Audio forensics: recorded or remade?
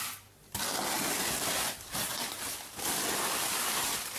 recorded